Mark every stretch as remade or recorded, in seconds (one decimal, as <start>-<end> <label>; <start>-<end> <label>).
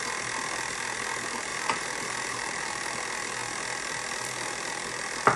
0.0-1.5 recorded; 1.5-2.8 remade; 2.8-5.4 recorded